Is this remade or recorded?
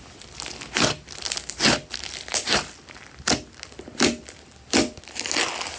recorded